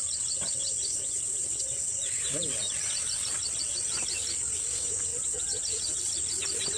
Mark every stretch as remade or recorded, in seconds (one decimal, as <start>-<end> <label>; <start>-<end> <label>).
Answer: 0.0-0.9 recorded; 0.9-1.9 remade; 1.9-5.1 recorded; 5.1-6.0 remade; 6.0-6.8 recorded